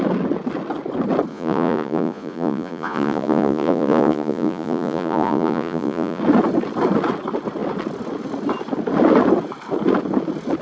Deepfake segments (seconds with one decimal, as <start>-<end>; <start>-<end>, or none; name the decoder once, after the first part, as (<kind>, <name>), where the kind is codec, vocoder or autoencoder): 1.3-6.2 (vocoder, Vocos)